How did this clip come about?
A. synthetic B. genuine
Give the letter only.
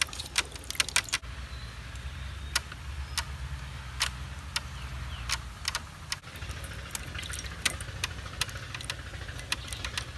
B